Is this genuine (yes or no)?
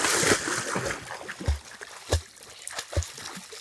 yes